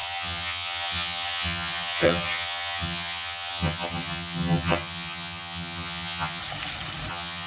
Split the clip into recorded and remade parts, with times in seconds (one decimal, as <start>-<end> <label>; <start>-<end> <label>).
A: 0.0-6.4 remade; 6.4-7.1 recorded; 7.1-7.5 remade